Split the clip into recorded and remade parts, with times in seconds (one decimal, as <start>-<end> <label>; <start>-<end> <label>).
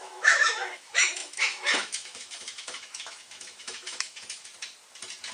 0.0-4.5 remade; 4.5-5.3 recorded